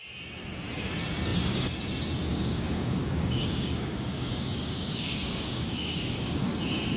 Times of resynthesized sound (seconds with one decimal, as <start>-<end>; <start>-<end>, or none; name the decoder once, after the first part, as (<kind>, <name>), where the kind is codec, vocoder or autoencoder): 2.3-6.5 (codec, DAC)